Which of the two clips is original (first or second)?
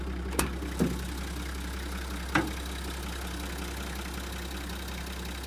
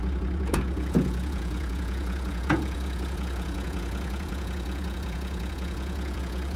first